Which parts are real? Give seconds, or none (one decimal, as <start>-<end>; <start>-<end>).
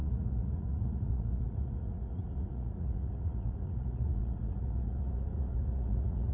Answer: none